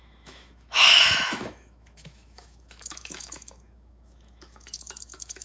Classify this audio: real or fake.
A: fake